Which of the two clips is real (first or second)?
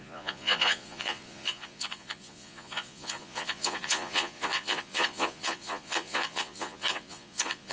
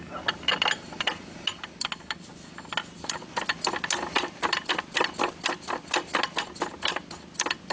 second